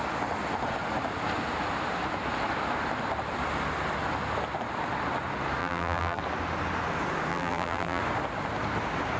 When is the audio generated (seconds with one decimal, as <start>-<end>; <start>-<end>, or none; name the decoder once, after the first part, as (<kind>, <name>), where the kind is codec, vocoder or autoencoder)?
5.6-6.2 (vocoder, BigVGAN v2); 7.3-8.0